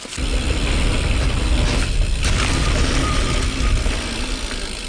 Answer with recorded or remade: recorded